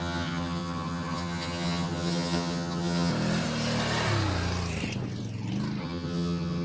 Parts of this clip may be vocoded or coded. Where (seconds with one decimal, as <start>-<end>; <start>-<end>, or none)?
0.0-3.1; 5.8-6.6